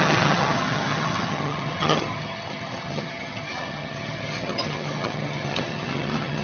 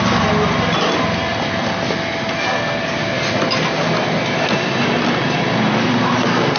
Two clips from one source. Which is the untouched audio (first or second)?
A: second